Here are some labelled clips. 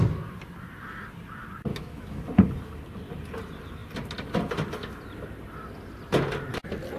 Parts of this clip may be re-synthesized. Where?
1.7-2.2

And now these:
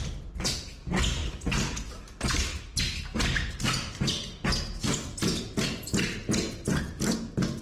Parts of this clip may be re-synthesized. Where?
none

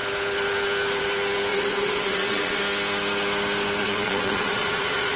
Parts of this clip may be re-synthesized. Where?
1.5-2.6; 3.8-5.2